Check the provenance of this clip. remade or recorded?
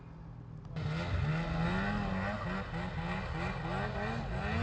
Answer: recorded